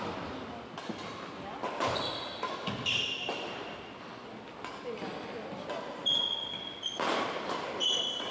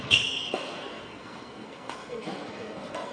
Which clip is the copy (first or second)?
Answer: second